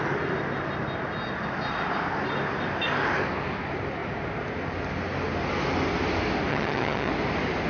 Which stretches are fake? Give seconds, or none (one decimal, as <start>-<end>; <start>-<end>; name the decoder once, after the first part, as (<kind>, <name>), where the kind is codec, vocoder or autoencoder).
6.5-7.1 (vocoder, HiFi-GAN)